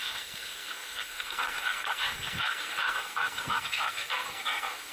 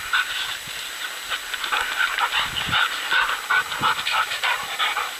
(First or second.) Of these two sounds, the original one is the second